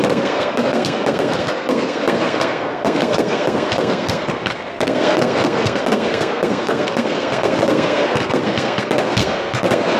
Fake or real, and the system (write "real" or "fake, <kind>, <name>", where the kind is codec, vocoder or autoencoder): fake, codec, SNAC